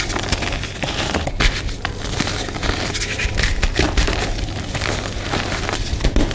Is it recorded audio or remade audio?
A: recorded